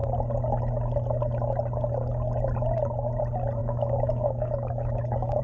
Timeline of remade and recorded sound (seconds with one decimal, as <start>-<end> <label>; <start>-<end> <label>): 0.0-3.6 recorded; 3.6-5.4 remade